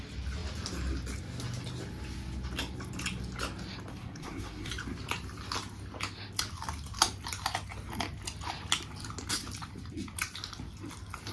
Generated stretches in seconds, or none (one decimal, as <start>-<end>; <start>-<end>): 3.9-4.7